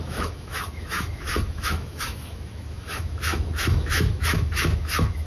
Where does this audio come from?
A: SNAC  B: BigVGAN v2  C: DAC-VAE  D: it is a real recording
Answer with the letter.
C